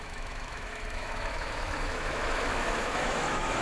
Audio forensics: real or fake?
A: fake